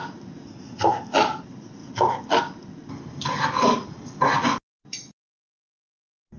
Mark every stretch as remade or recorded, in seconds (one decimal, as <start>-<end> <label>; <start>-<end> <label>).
0.0-6.4 recorded